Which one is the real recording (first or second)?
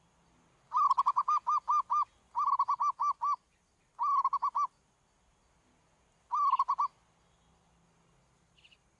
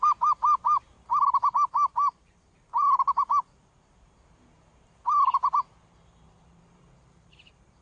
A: first